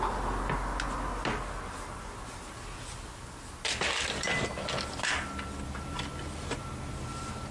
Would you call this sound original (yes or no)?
yes